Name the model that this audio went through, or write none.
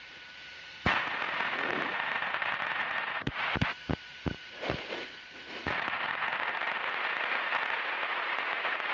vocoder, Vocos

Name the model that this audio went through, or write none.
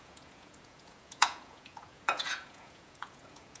vocoder, Vocos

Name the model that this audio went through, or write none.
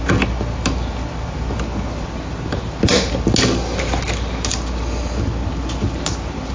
none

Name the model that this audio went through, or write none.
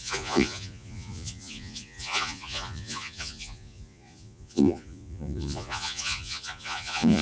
vocoder, Vocos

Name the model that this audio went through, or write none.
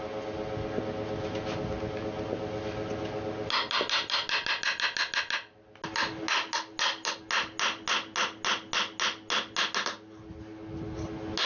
none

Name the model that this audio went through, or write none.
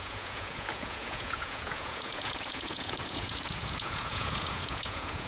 vocoder, Vocos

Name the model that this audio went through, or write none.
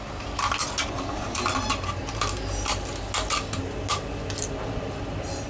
none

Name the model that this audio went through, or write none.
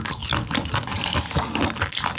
none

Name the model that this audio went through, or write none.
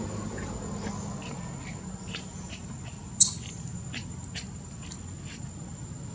none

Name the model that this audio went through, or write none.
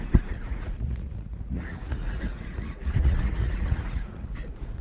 vocoder, Vocos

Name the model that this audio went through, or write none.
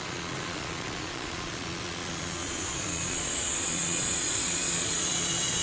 vocoder, Vocos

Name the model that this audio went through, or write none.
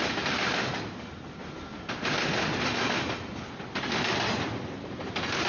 none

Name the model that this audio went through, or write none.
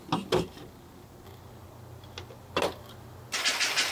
none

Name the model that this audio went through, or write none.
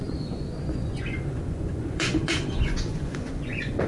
vocoder, Vocos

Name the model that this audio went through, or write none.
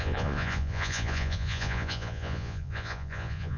vocoder, Vocos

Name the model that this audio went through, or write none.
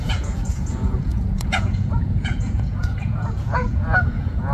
vocoder, Vocos